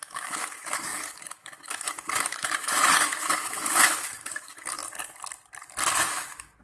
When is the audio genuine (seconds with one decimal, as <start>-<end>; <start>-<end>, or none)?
4.8-6.0